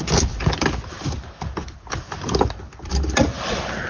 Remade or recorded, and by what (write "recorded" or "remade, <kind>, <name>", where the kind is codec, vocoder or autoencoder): recorded